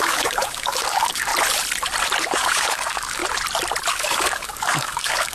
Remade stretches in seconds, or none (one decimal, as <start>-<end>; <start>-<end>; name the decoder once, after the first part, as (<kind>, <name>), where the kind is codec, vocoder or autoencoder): 0.0-1.3 (codec, DAC); 2.2-3.2; 3.9-5.3